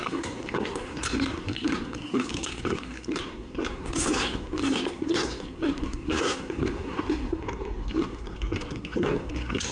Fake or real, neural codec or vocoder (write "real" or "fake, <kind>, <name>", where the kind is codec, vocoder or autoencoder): fake, codec, SNAC